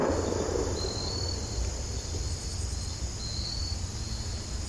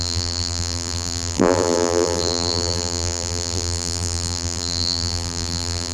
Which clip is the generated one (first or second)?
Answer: second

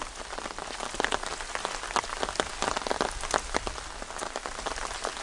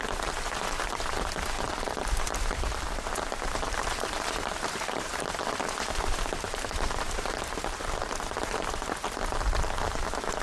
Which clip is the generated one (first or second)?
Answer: second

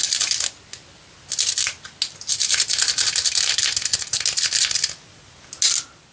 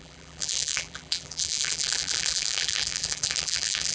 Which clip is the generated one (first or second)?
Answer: second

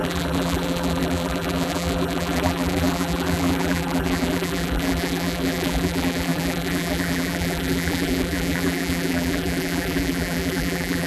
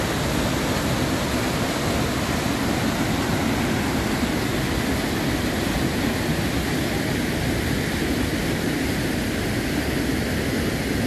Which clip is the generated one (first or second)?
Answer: first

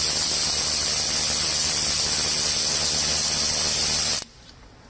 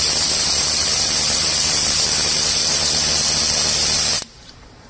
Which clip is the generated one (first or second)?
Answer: second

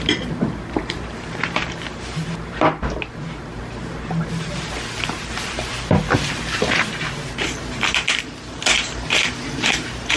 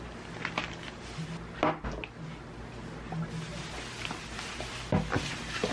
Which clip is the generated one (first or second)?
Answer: first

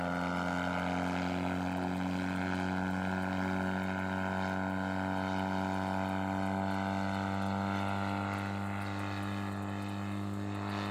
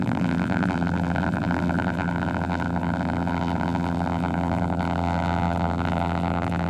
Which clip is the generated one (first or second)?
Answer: second